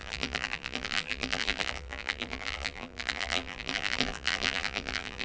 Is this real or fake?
fake